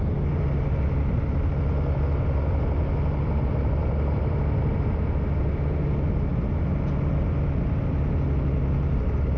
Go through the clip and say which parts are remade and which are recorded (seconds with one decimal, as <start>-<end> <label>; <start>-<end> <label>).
0.0-9.4 recorded